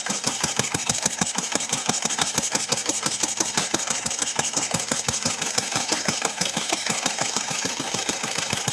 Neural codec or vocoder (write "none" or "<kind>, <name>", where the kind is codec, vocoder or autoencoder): codec, SNAC